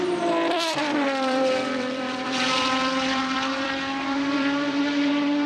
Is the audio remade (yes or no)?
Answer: yes